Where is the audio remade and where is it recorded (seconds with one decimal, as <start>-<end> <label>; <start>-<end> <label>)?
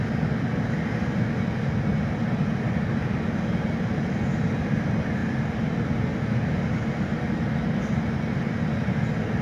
0.0-9.4 recorded